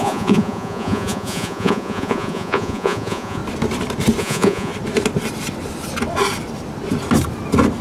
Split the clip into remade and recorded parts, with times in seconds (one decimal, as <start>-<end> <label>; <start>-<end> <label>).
0.0-3.4 remade; 3.4-4.2 recorded; 4.2-4.7 remade; 4.7-7.8 recorded